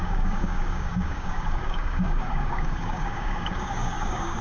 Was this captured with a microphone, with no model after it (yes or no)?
no